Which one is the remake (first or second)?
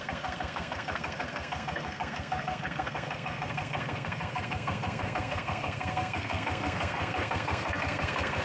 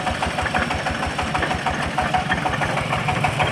first